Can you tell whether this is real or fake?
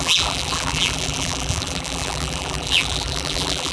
fake